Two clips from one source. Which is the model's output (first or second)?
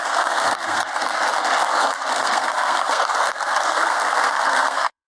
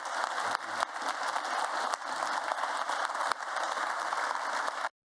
first